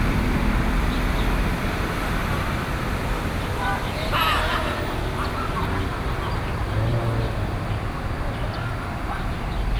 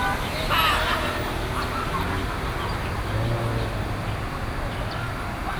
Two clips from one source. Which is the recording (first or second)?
second